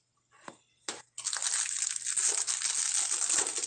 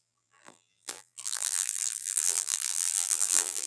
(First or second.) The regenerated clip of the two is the second